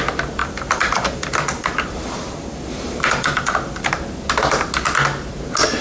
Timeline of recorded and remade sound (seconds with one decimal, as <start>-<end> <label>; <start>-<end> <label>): 0.0-0.4 recorded; 0.4-3.9 remade; 3.9-5.8 recorded